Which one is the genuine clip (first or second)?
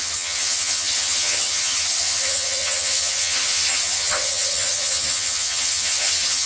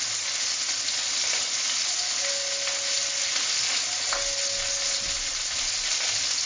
second